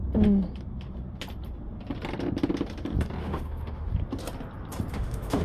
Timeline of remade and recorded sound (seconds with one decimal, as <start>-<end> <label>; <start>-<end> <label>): 0.0-3.2 recorded; 3.2-3.9 remade; 3.9-4.9 recorded; 4.9-5.4 remade